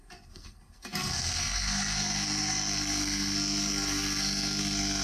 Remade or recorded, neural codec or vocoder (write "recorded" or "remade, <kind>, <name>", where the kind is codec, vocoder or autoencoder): remade, codec, SNAC